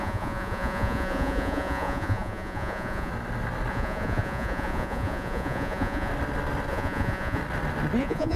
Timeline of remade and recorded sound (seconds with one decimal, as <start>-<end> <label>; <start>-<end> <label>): 0.0-3.1 remade; 3.1-3.7 recorded; 3.7-6.1 remade; 6.1-6.7 recorded; 6.7-7.4 remade; 7.4-8.0 recorded; 8.0-8.4 remade

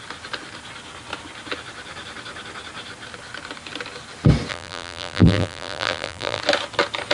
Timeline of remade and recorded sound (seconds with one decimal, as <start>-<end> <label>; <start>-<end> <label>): 0.0-4.5 recorded; 4.5-6.4 remade; 6.4-7.1 recorded

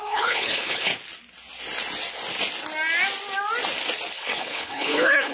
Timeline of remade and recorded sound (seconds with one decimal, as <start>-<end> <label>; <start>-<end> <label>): 0.0-0.9 remade; 0.9-4.1 recorded; 4.1-5.3 remade

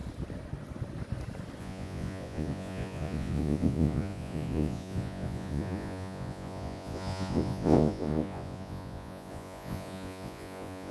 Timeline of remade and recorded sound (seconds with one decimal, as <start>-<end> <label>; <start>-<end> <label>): 0.0-1.6 recorded; 1.6-10.9 remade

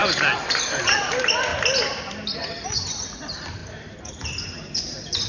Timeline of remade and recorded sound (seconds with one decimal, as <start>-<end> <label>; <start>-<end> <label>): 0.0-1.5 remade; 1.5-2.7 recorded; 2.7-5.3 remade

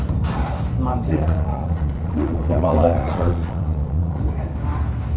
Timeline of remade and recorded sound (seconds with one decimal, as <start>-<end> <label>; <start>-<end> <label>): 0.0-1.1 recorded; 1.1-4.2 remade; 4.2-5.2 recorded

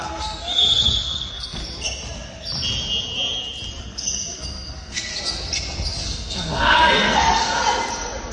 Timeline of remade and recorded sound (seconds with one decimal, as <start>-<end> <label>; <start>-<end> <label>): 0.0-1.6 remade; 1.6-3.8 recorded; 3.8-5.1 remade; 5.1-6.0 recorded; 6.0-7.6 remade; 7.6-8.3 recorded

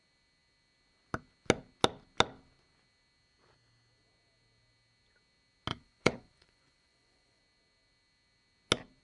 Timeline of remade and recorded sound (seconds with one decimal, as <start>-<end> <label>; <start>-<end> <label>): 0.0-5.7 recorded; 5.7-7.4 remade; 7.4-9.0 recorded